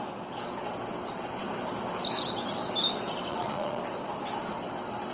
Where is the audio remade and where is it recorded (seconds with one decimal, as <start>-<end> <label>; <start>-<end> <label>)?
0.0-3.3 recorded; 3.3-3.8 remade; 3.8-5.1 recorded